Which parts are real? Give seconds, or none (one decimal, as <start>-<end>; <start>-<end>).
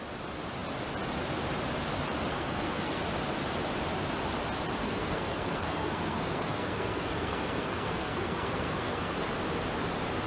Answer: 0.0-2.3; 3.0-4.8; 9.3-10.3